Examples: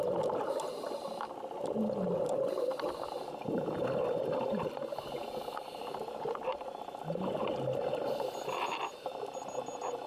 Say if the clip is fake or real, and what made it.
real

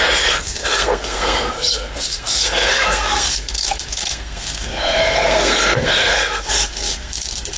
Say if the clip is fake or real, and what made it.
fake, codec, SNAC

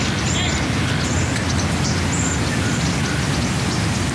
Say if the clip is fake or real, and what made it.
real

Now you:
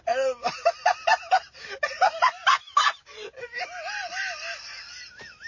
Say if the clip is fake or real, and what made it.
real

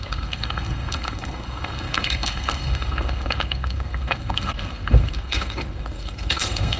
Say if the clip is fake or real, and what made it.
fake, codec, SNAC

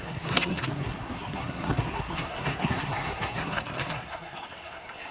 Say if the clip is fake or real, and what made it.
fake, codec, SNAC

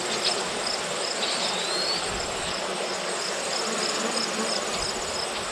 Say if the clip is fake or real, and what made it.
real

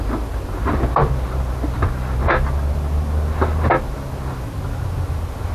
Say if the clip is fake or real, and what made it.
real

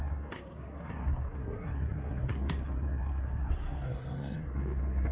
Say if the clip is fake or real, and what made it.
fake, codec, SNAC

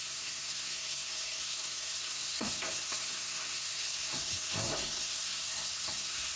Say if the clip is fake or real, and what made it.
fake, codec, SNAC